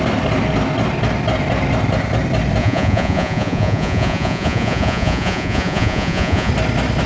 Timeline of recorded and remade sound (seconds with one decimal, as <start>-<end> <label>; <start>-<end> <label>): 0.0-2.6 recorded; 2.6-6.5 remade; 6.5-7.1 recorded